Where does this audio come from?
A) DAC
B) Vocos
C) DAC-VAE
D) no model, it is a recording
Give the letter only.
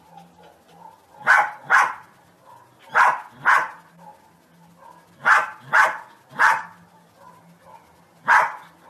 D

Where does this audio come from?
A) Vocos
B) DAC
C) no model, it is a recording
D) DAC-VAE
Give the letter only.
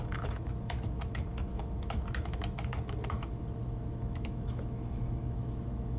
D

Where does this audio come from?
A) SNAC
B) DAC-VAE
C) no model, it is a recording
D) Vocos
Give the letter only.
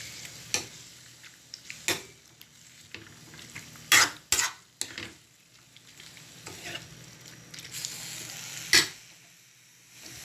C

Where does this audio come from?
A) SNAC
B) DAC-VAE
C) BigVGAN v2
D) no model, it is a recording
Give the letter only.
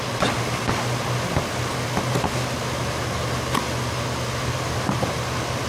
D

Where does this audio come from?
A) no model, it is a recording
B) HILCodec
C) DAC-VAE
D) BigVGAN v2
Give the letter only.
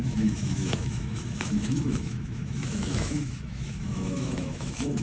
C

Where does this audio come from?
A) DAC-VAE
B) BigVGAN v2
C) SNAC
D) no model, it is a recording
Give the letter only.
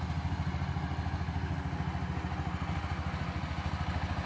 D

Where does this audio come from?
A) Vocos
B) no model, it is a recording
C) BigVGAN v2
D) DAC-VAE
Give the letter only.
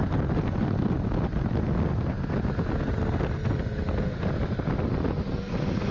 B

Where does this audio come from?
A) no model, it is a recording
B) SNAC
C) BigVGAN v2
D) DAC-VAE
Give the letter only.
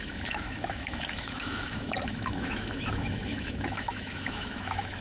D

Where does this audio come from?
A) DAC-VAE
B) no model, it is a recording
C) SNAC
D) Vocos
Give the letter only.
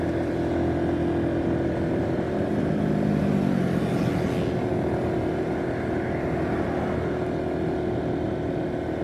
B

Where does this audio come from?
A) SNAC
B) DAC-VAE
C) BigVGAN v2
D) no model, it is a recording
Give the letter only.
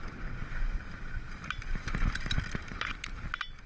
D